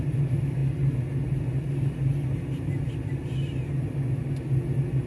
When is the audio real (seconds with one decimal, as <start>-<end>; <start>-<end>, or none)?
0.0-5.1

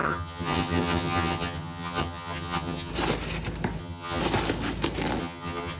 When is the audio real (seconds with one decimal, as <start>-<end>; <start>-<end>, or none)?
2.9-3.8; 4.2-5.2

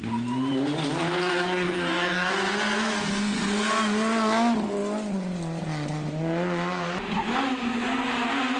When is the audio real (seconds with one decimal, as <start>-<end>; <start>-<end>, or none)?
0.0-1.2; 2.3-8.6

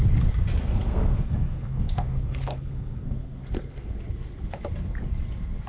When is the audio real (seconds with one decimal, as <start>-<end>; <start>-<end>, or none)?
0.0-0.6; 4.0-5.7